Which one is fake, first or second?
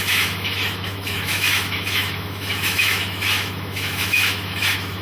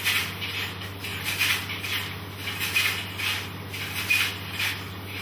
first